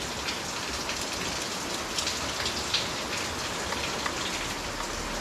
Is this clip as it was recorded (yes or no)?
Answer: yes